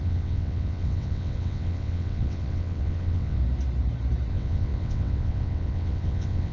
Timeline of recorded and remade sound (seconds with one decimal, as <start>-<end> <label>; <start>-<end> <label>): 0.0-3.4 remade; 3.4-4.3 recorded; 4.3-6.5 remade